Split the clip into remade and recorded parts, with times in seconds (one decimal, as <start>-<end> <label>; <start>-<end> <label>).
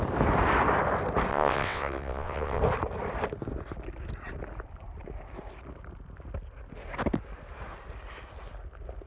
0.0-1.3 recorded; 1.3-2.6 remade; 2.6-9.1 recorded